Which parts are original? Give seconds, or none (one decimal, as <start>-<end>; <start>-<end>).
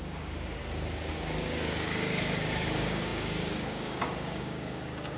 0.6-1.1